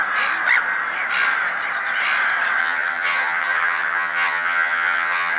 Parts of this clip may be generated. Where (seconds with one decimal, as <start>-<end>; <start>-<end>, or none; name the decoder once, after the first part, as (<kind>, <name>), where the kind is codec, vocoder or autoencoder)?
2.6-5.4 (vocoder, HiFi-GAN)

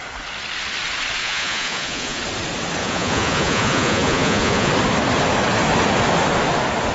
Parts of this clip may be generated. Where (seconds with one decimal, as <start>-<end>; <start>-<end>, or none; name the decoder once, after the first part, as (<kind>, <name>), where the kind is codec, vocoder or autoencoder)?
1.2-2.2 (vocoder, Vocos); 2.8-4.7

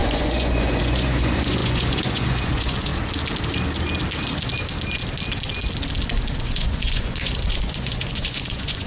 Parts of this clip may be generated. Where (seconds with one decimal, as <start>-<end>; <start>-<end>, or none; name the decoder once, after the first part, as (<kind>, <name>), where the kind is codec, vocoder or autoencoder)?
0.0-2.9 (vocoder, Vocos); 6.4-8.9

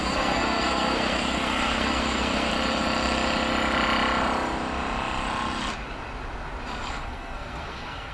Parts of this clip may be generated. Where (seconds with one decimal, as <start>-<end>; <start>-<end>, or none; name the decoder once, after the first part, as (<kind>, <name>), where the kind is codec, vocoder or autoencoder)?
0.0-2.5 (codec, SNAC); 6.9-8.1

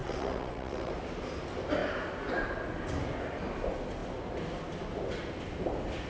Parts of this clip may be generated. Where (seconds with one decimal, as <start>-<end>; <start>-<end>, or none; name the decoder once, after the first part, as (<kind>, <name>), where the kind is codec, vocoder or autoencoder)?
0.0-0.9 (vocoder, WaveNeXt)

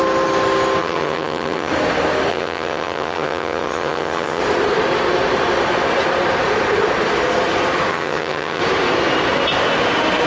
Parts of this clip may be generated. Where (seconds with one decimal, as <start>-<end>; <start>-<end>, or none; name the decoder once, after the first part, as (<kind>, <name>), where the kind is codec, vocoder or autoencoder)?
0.8-1.7 (vocoder, HiFi-GAN); 2.3-4.4; 7.9-8.6